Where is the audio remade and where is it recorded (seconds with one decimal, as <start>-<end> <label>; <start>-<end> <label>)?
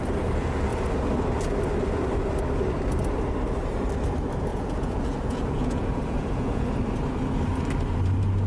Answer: 0.0-4.5 recorded; 4.5-6.7 remade; 6.7-8.5 recorded